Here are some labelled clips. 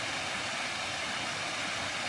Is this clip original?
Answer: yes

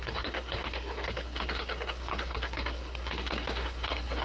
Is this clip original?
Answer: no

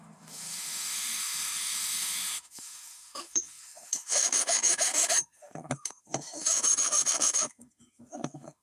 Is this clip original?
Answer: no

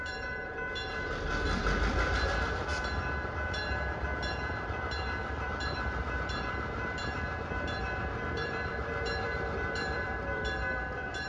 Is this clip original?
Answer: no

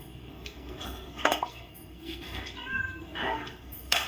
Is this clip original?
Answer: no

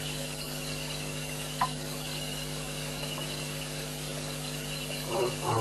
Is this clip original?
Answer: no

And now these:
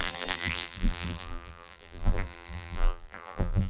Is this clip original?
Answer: no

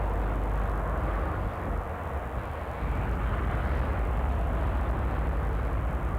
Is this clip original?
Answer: yes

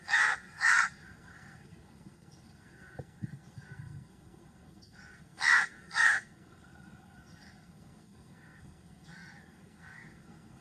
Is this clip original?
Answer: no